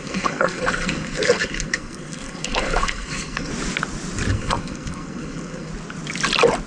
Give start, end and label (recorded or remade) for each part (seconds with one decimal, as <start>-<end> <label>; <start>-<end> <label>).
0.0-3.5 remade; 3.5-4.3 recorded; 4.3-5.7 remade; 5.7-6.7 recorded